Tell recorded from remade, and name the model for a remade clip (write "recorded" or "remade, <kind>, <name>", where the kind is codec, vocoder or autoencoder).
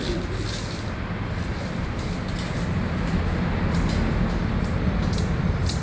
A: recorded